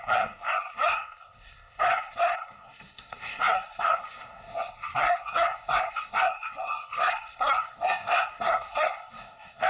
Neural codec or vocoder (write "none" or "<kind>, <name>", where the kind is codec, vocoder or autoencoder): codec, SNAC